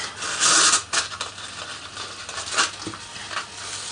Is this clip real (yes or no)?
yes